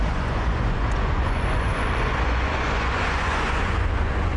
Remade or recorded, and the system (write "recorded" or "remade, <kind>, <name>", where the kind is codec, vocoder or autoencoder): remade, vocoder, Vocos